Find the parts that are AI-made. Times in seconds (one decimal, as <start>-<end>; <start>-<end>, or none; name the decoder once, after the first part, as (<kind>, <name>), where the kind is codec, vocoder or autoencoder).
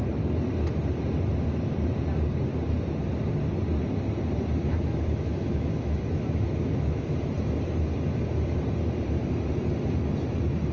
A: 4.7-7.0 (autoencoder, DAC-VAE)